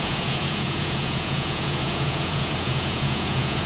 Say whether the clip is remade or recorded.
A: remade